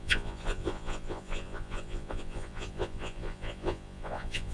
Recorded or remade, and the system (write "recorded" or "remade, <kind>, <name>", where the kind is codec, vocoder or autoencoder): remade, vocoder, Vocos